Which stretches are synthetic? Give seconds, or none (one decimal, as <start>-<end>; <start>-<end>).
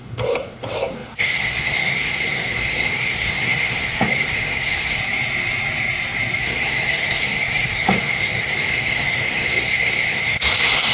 0.0-5.0; 6.4-10.9